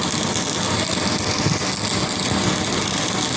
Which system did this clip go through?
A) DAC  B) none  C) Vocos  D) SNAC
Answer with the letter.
B